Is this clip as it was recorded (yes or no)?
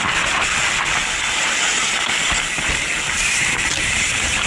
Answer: yes